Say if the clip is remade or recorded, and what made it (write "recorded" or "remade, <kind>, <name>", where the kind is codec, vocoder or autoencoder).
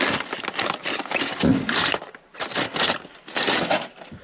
recorded